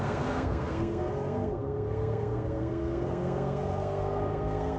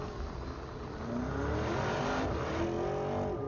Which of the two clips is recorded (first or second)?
second